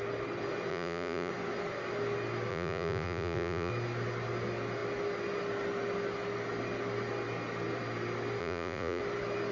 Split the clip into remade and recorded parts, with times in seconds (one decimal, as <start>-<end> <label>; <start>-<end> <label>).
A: 0.0-0.7 recorded; 0.7-1.3 remade; 1.3-2.5 recorded; 2.5-3.7 remade; 3.7-8.4 recorded; 8.4-9.0 remade; 9.0-9.5 recorded